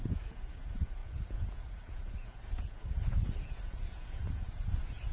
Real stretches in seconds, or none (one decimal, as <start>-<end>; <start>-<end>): none